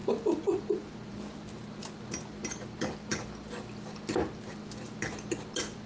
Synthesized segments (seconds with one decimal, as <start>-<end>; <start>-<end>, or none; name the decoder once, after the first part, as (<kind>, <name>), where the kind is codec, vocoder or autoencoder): none